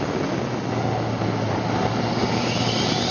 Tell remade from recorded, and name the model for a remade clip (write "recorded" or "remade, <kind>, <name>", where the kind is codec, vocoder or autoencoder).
recorded